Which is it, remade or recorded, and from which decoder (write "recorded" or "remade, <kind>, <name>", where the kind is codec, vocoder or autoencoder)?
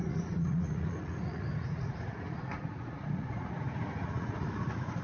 remade, vocoder, Vocos